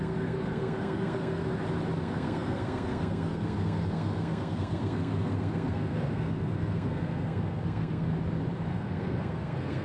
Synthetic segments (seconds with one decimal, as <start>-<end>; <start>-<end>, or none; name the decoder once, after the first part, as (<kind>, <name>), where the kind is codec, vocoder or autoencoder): 0.0-1.4 (codec, SNAC); 2.0-8.1; 8.7-9.8